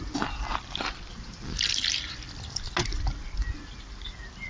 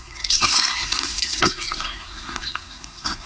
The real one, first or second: first